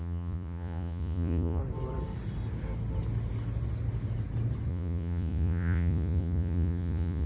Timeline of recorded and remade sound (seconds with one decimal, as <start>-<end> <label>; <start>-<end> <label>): 0.0-1.6 remade; 1.6-4.7 recorded; 4.7-7.3 remade